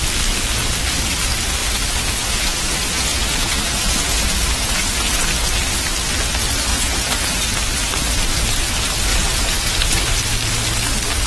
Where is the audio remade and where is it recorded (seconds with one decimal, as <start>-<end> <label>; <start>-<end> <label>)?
0.0-1.6 recorded; 1.6-5.2 remade; 5.2-6.7 recorded; 6.7-7.3 remade; 7.3-9.1 recorded; 9.1-10.1 remade; 10.1-11.3 recorded